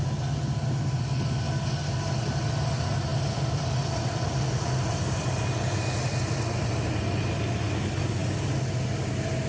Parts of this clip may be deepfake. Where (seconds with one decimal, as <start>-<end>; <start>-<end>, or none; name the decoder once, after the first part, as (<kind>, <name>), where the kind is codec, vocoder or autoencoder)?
3.1-5.3 (vocoder, BigVGAN v2)